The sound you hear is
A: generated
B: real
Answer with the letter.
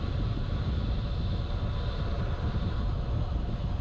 B